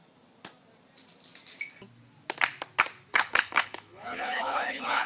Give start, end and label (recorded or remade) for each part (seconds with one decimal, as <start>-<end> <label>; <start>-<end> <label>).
0.0-3.1 recorded; 3.1-5.1 remade